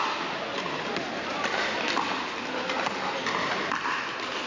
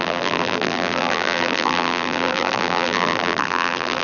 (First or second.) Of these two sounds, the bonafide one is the first